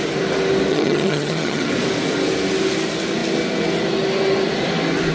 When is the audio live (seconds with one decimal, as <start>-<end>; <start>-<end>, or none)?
0.0-0.7; 1.7-5.1